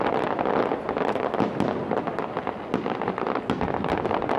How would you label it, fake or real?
real